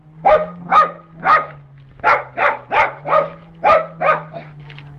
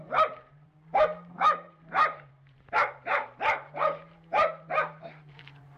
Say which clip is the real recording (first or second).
first